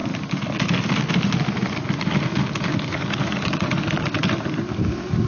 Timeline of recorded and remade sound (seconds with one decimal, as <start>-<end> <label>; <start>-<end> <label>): 0.0-2.7 recorded; 2.7-3.8 remade; 3.8-5.3 recorded